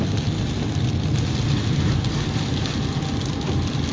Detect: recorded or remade recorded